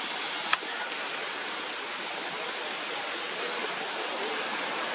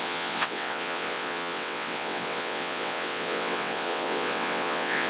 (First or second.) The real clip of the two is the first